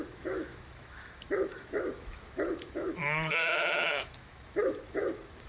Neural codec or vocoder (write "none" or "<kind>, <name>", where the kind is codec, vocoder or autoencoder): autoencoder, DAC-VAE